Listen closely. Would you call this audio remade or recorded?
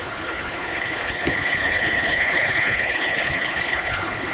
remade